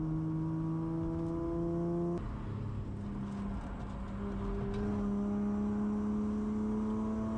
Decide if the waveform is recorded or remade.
recorded